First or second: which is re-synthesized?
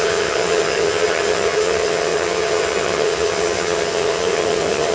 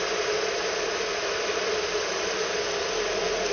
first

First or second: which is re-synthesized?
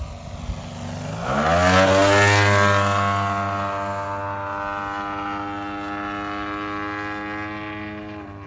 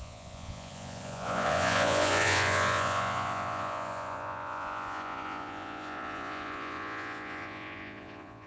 second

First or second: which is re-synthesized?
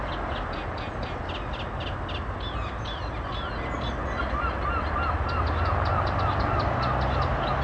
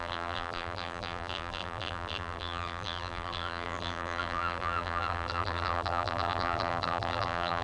second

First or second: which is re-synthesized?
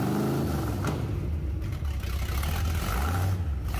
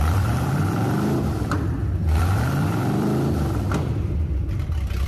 second